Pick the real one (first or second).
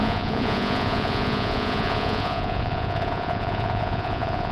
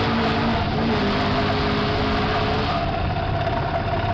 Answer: second